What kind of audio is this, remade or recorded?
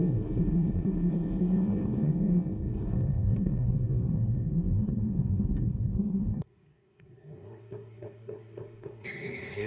remade